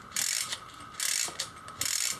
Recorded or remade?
recorded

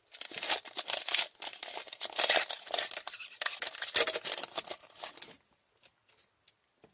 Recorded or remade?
recorded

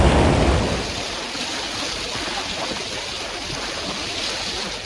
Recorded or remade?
recorded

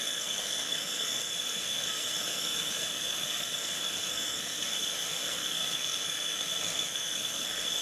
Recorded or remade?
remade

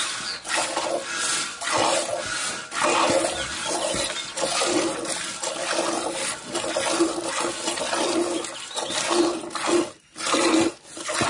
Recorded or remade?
recorded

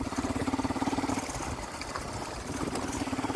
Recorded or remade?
recorded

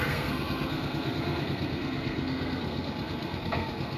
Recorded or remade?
remade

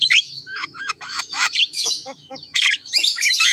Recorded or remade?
remade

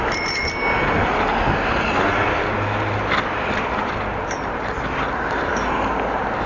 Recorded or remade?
recorded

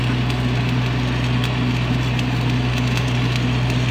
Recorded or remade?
remade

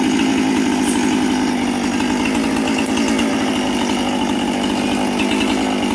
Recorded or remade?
recorded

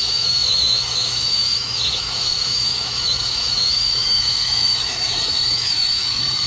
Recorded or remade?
remade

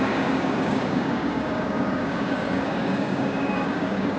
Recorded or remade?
remade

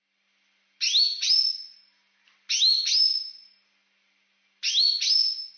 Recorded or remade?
recorded